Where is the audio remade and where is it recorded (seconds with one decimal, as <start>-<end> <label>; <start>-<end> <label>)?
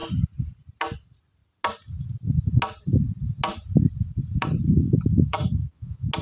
0.0-0.7 remade; 0.7-3.5 recorded; 3.5-5.7 remade; 5.7-6.2 recorded